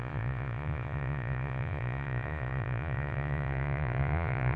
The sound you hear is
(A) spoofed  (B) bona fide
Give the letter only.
A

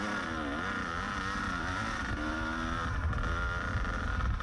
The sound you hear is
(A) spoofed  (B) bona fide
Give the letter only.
B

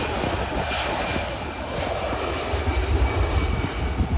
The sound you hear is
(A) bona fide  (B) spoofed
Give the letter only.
A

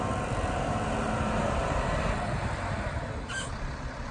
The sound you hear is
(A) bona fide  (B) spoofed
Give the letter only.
A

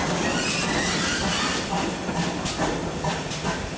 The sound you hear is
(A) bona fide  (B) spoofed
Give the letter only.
A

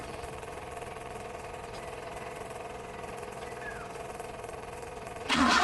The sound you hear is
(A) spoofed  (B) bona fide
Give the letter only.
A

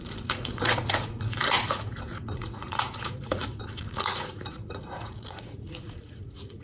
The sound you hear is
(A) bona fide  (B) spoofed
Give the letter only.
B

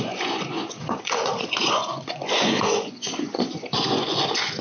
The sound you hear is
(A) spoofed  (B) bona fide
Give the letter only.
A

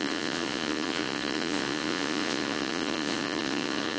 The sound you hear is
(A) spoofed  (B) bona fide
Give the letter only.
A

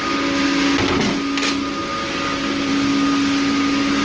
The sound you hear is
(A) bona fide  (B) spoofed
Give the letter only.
A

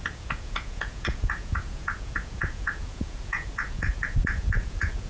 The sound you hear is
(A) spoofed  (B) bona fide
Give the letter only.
A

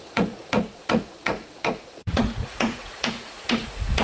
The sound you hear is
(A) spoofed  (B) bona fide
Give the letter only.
A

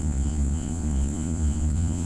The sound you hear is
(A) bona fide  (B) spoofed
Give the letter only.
B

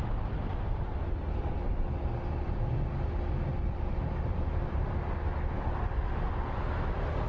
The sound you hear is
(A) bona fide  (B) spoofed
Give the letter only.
A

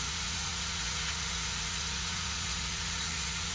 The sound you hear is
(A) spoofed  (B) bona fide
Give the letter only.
A